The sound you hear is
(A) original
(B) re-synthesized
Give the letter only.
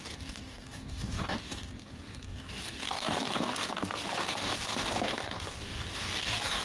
B